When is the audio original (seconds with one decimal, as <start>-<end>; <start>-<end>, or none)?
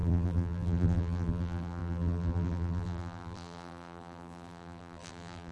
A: none